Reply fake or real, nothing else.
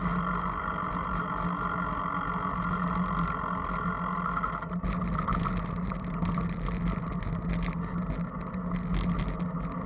real